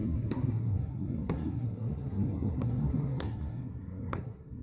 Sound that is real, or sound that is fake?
fake